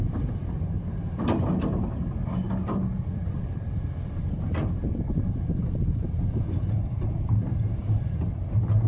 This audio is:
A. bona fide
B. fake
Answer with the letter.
B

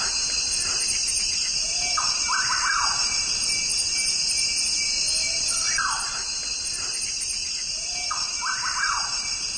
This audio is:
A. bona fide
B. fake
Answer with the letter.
A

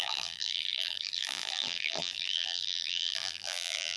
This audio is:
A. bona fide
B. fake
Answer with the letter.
B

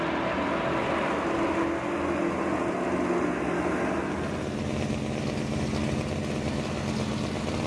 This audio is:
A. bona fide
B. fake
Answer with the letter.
A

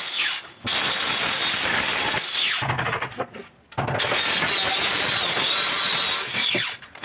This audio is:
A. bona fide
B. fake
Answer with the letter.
A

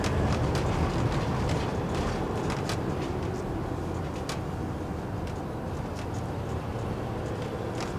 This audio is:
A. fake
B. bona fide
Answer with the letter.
B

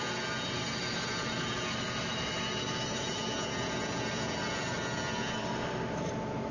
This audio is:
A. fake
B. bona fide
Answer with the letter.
B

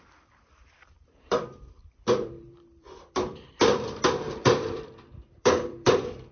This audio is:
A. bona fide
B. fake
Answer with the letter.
B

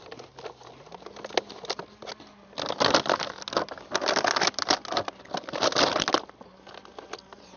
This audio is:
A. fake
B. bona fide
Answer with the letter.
B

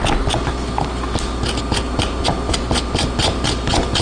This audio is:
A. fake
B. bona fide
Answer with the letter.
B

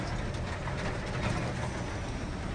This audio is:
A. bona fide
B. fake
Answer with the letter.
A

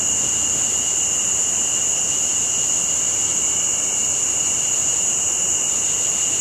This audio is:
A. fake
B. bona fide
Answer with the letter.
B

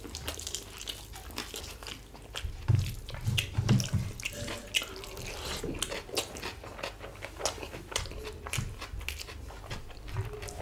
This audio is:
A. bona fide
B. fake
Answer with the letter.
A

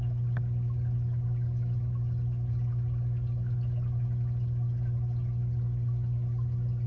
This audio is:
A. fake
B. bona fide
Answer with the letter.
B